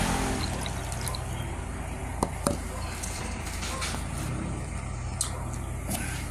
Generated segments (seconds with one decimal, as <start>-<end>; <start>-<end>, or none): none

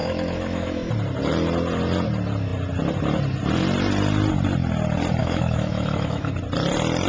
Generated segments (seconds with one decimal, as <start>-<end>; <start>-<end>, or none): 0.0-0.9; 5.2-6.3

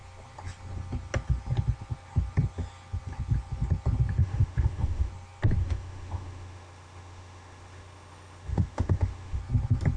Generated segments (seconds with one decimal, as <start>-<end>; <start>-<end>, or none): 4.2-5.1; 5.6-9.4

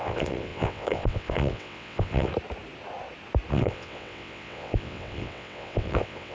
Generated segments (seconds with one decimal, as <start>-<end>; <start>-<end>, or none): 0.0-2.3; 3.5-6.3

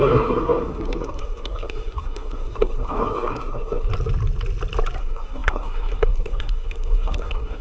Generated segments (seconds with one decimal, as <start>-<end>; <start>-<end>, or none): 0.0-3.9; 5.0-7.6

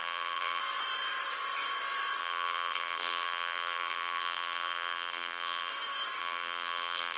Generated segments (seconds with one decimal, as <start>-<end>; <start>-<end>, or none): 0.0-0.6; 2.2-5.7; 6.2-7.2

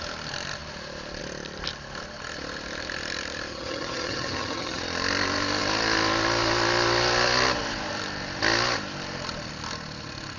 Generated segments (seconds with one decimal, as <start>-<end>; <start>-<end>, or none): 3.5-4.8

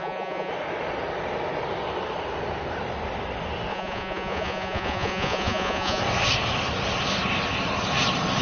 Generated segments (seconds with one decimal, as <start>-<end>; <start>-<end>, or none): 0.0-0.5; 3.7-6.0